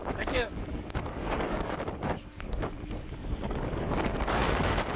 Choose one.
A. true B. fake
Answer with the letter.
B